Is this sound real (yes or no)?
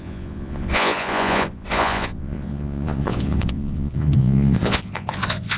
no